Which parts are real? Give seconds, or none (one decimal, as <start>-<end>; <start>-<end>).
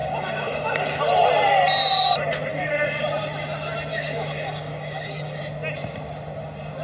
1.0-2.5; 3.0-3.9; 5.4-6.8